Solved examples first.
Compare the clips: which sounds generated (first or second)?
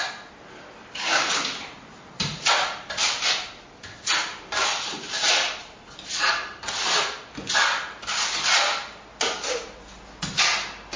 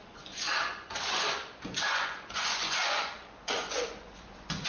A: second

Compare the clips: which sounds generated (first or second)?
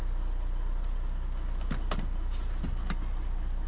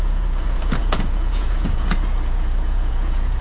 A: second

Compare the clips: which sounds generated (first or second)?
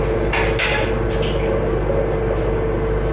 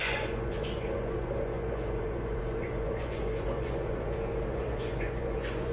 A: second